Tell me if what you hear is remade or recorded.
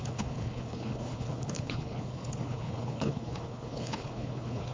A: remade